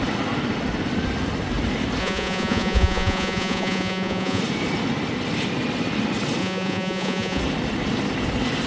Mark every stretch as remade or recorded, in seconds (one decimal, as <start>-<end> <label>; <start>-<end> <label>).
0.0-2.0 recorded; 2.0-4.4 remade; 4.4-6.4 recorded; 6.4-7.4 remade; 7.4-8.7 recorded